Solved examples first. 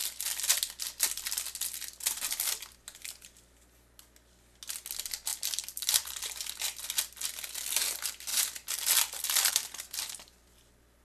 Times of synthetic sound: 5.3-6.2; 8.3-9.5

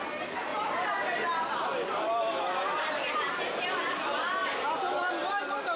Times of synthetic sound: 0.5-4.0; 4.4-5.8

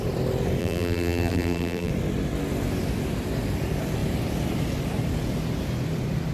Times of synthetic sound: 0.6-1.9

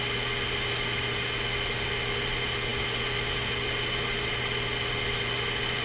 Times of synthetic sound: none

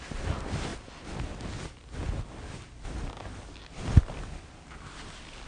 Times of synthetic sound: none

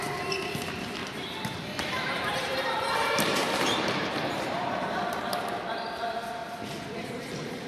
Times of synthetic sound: 1.0-5.4